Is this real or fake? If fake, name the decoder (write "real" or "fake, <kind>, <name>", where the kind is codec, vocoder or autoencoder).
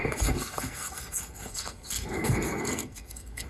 fake, codec, SNAC